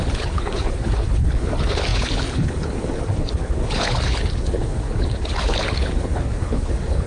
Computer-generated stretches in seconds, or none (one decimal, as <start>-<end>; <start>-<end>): 0.0-7.1